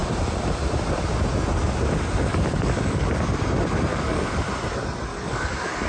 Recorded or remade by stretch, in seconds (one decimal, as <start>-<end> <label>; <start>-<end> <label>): 0.0-2.3 recorded; 2.3-3.1 remade; 3.1-3.9 recorded; 3.9-4.5 remade; 4.5-5.1 recorded; 5.1-5.9 remade